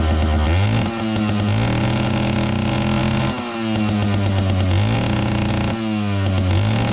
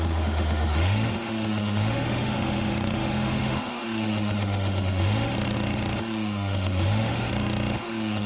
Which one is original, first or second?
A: first